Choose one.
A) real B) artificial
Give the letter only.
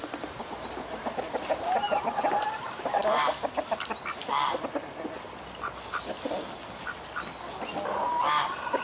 A